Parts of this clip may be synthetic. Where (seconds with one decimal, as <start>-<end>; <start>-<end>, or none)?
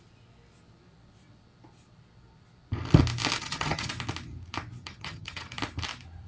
3.4-3.9; 4.8-5.6